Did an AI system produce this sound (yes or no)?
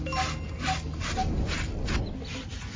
no